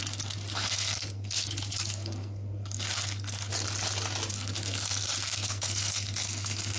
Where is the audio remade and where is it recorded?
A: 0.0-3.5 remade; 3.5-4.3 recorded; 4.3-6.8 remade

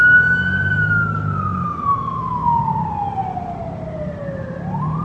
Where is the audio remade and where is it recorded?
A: 0.0-1.5 recorded; 1.5-2.6 remade; 2.6-5.0 recorded

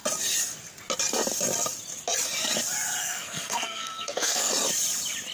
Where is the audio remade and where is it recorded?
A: 0.0-3.0 recorded; 3.0-4.5 remade; 4.5-5.3 recorded

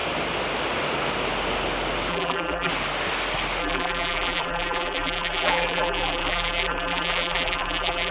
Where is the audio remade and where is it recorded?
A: 0.0-2.1 recorded; 2.1-2.7 remade; 2.7-3.6 recorded; 3.6-8.1 remade

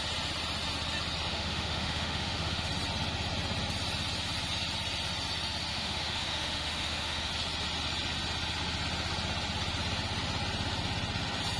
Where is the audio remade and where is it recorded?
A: 0.0-1.3 recorded; 1.3-2.7 remade; 2.7-5.7 recorded; 5.7-7.3 remade; 7.3-11.6 recorded

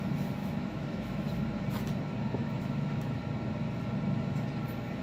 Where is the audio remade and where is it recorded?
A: 0.0-0.4 recorded; 0.4-1.3 remade; 1.3-2.4 recorded; 2.4-3.2 remade; 3.2-5.0 recorded

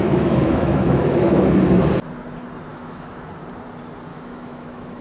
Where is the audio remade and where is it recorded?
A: 0.0-1.5 remade; 1.5-2.7 recorded; 2.7-3.3 remade; 3.3-4.1 recorded; 4.1-5.0 remade